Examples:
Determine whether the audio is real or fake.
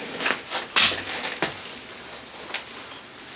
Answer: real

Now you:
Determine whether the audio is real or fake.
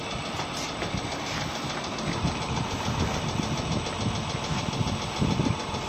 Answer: real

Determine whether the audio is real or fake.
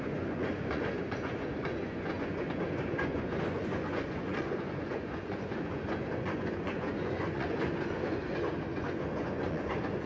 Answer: fake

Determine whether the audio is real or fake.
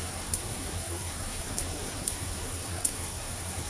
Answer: fake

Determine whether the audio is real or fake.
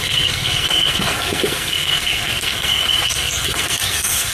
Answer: fake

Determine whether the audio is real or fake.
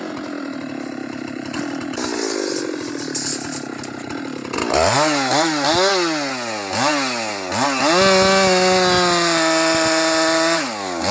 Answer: real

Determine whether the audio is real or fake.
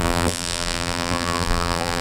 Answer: fake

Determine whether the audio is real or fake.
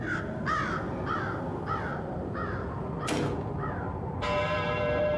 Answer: fake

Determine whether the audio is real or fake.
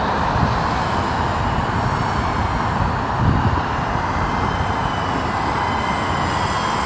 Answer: real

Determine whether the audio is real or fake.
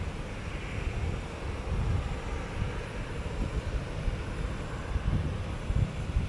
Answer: real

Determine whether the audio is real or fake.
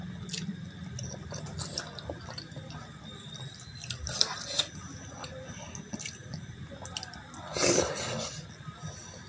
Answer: real